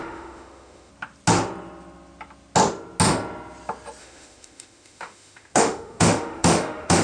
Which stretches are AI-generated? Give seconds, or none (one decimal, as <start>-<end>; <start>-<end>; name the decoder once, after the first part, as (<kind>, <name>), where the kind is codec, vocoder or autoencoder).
0.0-0.9 (autoencoder, DAC-VAE); 4.0-7.0